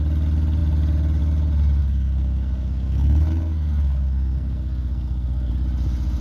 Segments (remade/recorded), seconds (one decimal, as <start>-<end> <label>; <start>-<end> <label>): 0.0-1.8 recorded; 1.8-5.5 remade; 5.5-6.2 recorded